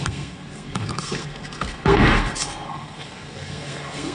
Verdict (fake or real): fake